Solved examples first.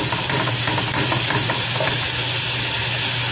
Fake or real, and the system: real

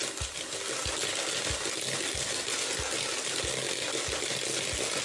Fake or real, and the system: real